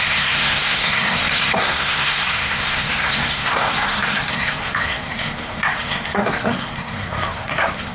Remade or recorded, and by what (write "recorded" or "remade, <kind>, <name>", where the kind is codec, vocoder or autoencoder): remade, codec, SNAC